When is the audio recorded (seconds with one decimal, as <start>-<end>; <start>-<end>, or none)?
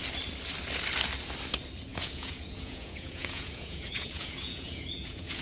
0.0-1.9